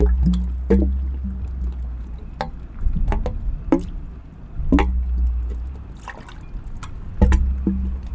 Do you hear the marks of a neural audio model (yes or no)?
no